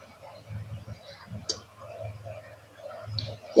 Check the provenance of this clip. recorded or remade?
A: recorded